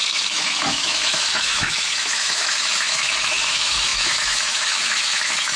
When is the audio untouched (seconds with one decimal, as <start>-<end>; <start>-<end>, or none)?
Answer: none